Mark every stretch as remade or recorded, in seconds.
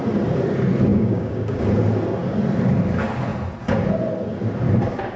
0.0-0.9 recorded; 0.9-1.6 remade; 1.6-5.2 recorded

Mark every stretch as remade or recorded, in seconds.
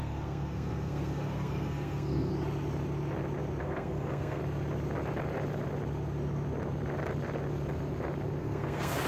0.0-2.3 remade; 2.3-3.6 recorded; 3.6-4.4 remade; 4.4-8.4 recorded; 8.4-9.1 remade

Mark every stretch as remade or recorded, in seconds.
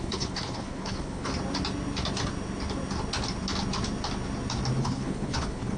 0.0-1.3 remade; 1.3-4.8 recorded; 4.8-5.8 remade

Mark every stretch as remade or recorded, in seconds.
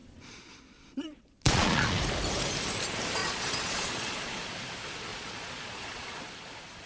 0.0-2.0 remade; 2.0-3.2 recorded; 3.2-4.5 remade; 4.5-5.1 recorded; 5.1-6.2 remade; 6.2-6.9 recorded